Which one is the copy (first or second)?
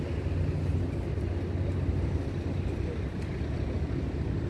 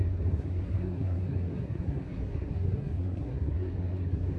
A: second